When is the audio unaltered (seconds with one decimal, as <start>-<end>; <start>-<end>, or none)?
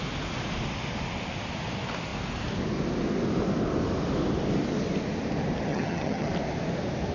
0.0-5.7; 6.3-7.1